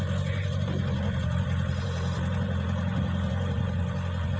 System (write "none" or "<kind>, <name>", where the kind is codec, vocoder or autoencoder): vocoder, BigVGAN v2